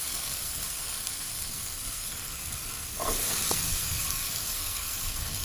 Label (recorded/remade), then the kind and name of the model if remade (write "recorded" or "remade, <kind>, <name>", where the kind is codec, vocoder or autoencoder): remade, codec, SNAC